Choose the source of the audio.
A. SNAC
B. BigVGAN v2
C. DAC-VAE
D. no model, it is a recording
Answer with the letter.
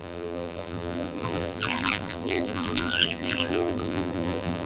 B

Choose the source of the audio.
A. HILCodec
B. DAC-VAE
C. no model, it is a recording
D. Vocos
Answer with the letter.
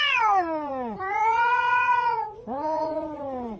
D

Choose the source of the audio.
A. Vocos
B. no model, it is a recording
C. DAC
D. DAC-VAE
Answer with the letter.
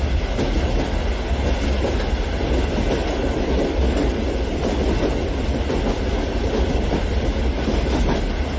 B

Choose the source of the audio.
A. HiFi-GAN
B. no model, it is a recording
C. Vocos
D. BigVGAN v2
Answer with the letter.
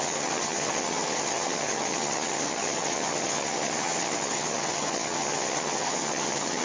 A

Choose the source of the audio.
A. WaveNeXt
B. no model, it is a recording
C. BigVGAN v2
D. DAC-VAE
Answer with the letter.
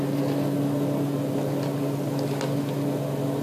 B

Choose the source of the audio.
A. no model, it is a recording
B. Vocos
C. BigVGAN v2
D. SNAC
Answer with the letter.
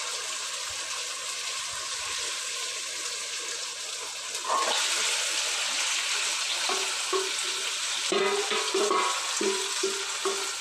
C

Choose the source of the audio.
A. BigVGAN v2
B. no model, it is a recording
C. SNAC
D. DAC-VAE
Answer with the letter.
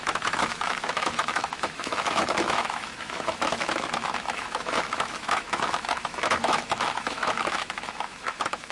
D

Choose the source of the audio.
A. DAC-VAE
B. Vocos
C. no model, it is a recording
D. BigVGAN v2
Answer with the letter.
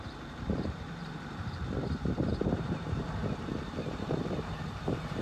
D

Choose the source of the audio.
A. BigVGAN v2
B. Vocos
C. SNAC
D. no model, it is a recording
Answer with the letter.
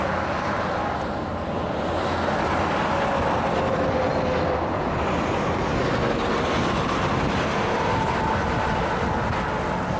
D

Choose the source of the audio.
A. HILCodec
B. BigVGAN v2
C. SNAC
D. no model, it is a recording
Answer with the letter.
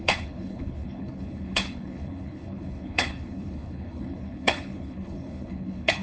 A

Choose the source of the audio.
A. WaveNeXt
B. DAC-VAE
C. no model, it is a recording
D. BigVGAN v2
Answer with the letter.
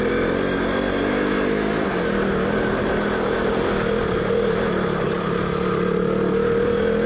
C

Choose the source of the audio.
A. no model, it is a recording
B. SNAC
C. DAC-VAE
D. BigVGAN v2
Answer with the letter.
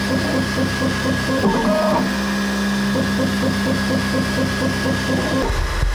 A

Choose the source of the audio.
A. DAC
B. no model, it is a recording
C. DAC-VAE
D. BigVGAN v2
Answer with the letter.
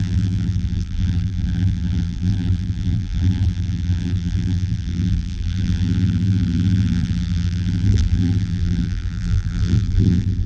D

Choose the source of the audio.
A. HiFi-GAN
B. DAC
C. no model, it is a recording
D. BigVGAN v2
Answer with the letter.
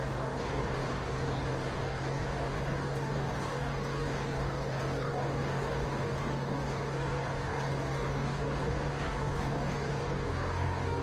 B